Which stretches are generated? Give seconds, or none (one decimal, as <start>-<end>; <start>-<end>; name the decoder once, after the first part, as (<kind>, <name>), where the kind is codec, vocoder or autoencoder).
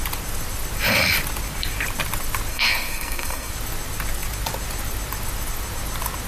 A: 2.5-3.5 (codec, SNAC)